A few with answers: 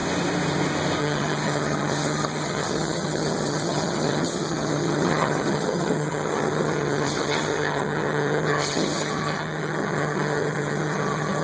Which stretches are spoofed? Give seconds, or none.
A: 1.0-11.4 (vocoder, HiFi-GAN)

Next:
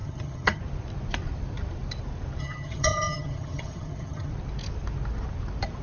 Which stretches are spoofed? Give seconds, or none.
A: 0.0-0.6 (vocoder, HiFi-GAN); 2.4-4.3

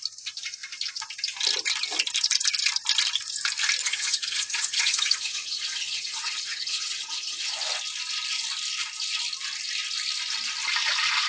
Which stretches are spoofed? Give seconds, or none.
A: 3.8-7.5 (vocoder, HiFi-GAN)

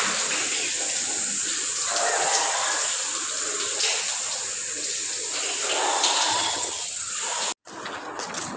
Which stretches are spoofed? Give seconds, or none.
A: 6.3-7.1 (vocoder, HiFi-GAN)

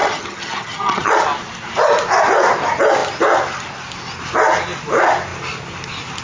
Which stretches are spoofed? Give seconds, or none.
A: 0.0-1.1 (vocoder, HiFi-GAN)

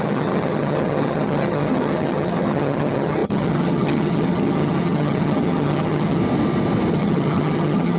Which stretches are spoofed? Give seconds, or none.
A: 0.0-6.2 (vocoder, HiFi-GAN); 6.9-8.0